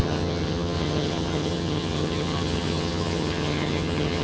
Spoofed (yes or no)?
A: yes